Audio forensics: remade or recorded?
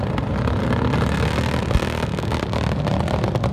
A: recorded